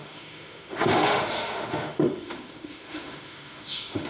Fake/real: fake